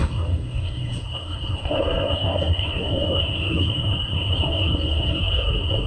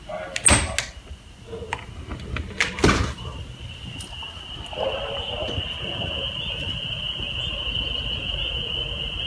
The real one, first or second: second